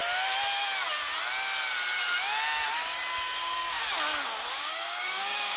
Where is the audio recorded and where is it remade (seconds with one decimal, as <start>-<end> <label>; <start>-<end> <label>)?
0.0-3.4 recorded; 3.4-3.8 remade; 3.8-4.5 recorded; 4.5-5.6 remade